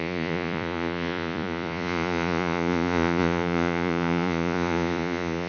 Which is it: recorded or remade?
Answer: remade